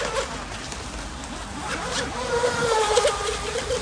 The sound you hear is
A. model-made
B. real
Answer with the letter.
B